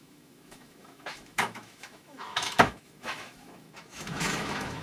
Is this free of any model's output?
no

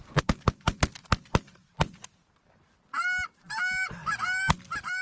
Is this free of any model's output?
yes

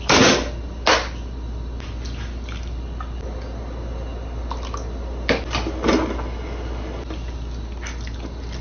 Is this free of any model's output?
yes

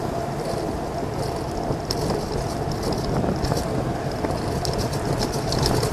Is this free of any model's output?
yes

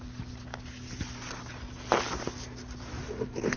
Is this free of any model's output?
yes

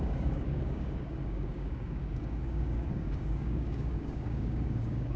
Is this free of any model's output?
no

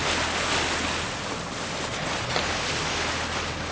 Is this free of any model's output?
yes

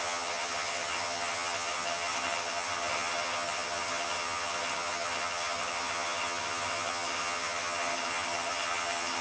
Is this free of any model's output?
no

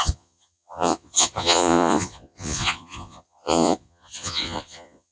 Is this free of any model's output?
no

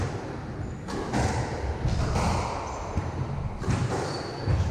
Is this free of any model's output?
yes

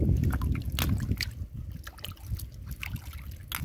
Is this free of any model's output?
yes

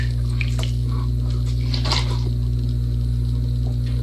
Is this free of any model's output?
yes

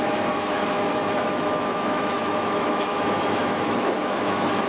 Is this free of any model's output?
no